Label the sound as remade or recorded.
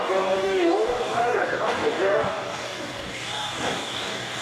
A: remade